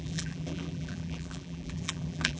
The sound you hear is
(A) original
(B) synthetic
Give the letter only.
B